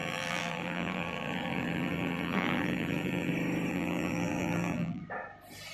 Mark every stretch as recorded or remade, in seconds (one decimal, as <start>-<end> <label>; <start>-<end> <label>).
0.0-3.3 remade; 3.3-3.7 recorded; 3.7-5.0 remade; 5.0-5.7 recorded